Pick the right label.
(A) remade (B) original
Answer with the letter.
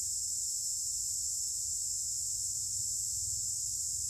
B